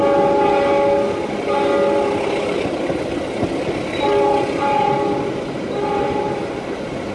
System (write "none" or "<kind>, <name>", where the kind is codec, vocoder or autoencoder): none